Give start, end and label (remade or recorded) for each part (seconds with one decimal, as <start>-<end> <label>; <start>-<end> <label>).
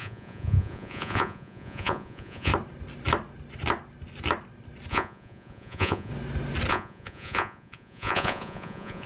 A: 0.0-2.5 remade; 2.5-4.9 recorded; 4.9-6.1 remade; 6.1-6.7 recorded; 6.7-9.1 remade